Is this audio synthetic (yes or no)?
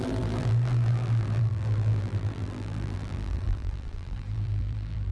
yes